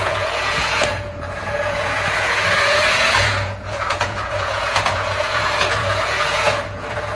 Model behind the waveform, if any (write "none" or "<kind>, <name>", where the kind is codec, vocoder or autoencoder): vocoder, Vocos